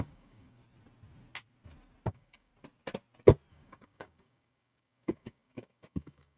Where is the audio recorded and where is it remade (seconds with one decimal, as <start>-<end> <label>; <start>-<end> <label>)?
0.0-0.6 remade; 0.6-2.1 recorded; 2.1-2.5 remade; 2.5-3.5 recorded; 3.5-6.4 remade